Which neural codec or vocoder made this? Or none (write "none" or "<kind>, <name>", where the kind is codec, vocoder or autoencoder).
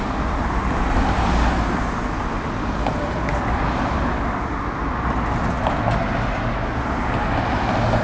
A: none